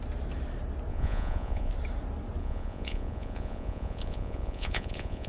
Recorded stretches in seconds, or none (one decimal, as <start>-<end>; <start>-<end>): 0.0-0.9; 1.7-2.4